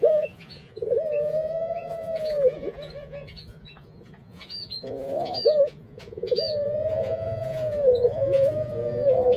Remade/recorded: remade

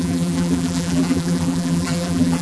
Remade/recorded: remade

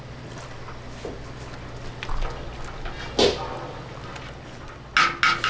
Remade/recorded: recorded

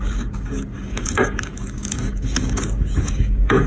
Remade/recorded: remade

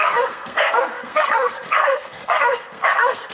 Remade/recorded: remade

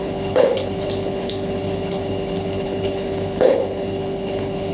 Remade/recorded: remade